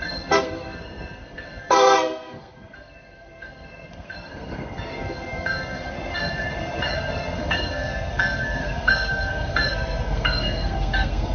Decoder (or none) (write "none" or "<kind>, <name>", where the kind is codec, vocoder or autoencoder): codec, SNAC